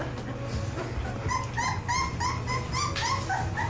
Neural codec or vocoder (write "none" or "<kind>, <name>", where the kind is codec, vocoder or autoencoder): none